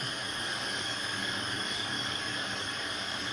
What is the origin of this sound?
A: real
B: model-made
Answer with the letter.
B